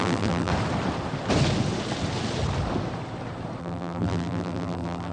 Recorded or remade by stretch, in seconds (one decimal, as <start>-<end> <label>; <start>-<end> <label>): 0.0-0.5 remade; 0.5-3.6 recorded; 3.6-5.1 remade